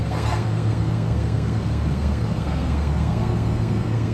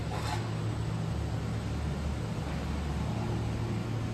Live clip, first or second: second